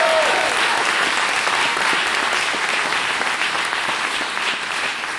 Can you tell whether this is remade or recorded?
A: recorded